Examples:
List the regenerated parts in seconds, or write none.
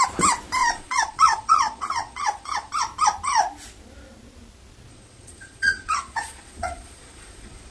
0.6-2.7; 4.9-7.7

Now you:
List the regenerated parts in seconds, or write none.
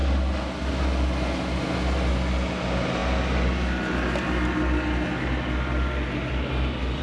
none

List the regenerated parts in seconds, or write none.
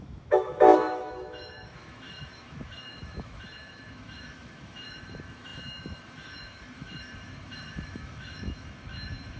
0.0-9.4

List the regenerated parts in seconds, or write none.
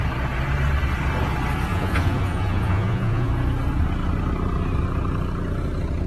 1.7-3.3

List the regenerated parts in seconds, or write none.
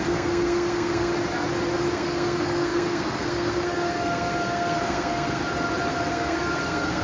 0.0-1.1; 1.9-5.4; 6.1-7.0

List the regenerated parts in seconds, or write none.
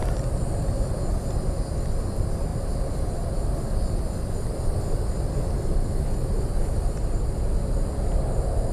0.0-0.9; 2.5-7.6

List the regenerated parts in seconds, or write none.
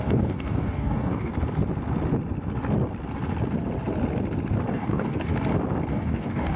0.0-1.3; 4.7-5.3; 5.9-6.6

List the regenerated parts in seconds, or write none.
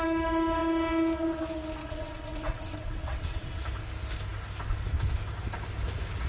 1.8-3.6